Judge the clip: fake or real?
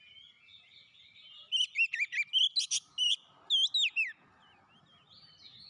real